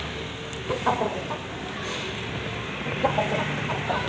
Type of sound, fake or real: real